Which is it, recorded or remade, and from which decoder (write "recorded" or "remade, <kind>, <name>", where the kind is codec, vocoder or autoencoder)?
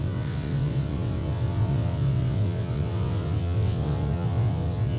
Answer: remade, vocoder, WaveNeXt